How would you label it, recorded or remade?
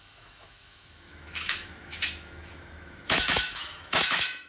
remade